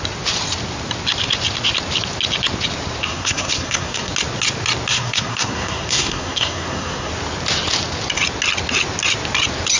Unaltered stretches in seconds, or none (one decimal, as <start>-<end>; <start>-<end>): 0.0-3.0; 4.1-4.9; 7.1-9.8